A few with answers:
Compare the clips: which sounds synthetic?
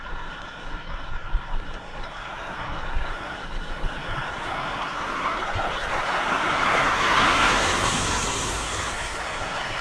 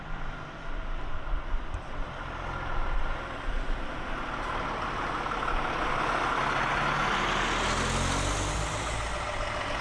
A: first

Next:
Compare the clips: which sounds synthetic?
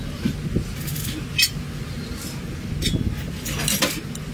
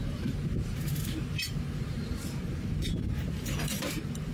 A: second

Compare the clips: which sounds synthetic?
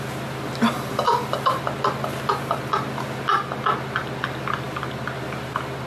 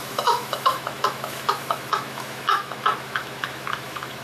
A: second